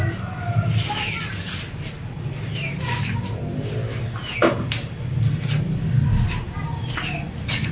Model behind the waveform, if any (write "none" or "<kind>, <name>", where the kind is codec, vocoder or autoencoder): none